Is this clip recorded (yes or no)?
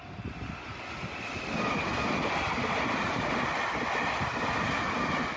yes